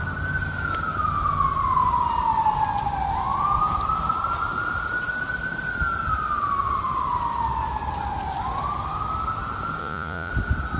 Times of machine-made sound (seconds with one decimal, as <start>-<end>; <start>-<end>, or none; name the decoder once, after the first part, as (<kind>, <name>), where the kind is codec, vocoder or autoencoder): 9.8-10.3 (vocoder, Vocos)